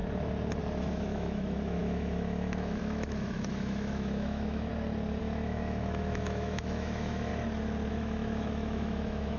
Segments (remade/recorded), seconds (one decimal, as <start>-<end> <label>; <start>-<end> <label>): 0.0-0.8 recorded; 0.8-4.7 remade; 4.7-5.2 recorded; 5.2-7.3 remade; 7.3-7.9 recorded; 7.9-9.4 remade